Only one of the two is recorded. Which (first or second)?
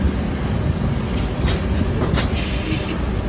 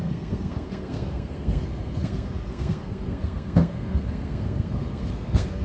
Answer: first